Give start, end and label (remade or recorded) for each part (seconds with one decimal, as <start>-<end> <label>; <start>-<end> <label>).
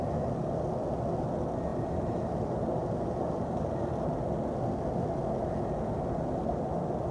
0.0-1.7 recorded; 1.7-3.8 remade; 3.8-7.1 recorded